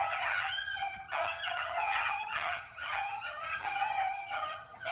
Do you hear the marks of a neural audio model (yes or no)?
yes